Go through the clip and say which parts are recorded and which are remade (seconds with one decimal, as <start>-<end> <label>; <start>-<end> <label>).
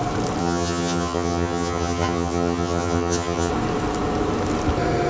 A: 0.0-0.4 recorded; 0.4-3.5 remade; 3.5-5.1 recorded